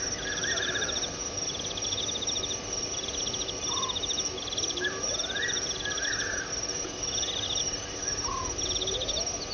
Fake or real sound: real